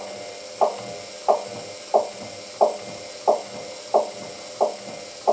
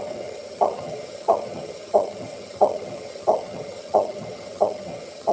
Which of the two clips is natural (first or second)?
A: first